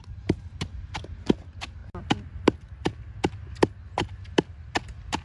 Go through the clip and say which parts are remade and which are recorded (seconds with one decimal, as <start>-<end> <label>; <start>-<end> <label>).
0.0-5.2 recorded